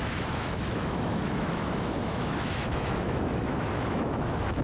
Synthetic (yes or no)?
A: yes